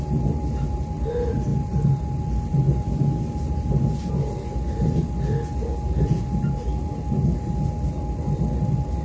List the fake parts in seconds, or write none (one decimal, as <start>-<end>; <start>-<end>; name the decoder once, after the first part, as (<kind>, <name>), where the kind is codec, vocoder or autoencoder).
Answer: none